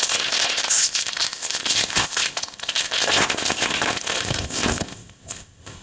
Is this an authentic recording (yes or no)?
no